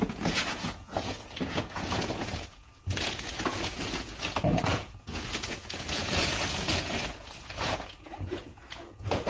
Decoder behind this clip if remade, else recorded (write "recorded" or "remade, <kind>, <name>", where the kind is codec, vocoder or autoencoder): remade, vocoder, Vocos